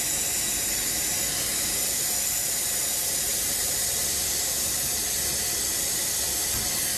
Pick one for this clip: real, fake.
real